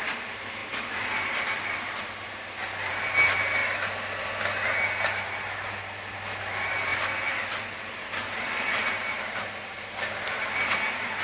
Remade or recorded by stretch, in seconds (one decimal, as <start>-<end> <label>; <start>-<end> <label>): 0.0-11.2 recorded